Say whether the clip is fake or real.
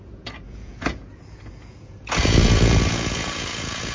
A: fake